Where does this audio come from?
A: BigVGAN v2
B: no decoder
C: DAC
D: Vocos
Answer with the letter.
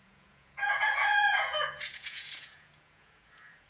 D